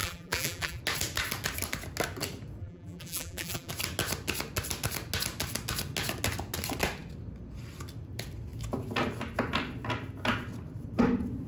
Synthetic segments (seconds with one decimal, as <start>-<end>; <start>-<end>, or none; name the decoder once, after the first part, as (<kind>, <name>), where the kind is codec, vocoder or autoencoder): 0.0-0.8 (vocoder, BigVGAN v2); 2.6-3.7